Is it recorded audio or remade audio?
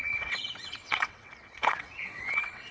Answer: remade